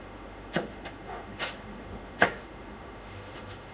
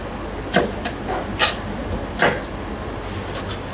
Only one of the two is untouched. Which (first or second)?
second